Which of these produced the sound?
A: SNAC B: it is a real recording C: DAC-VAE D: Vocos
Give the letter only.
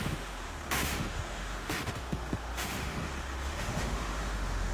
C